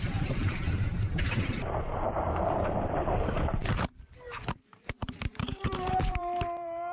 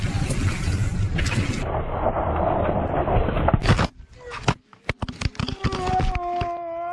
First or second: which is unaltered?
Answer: second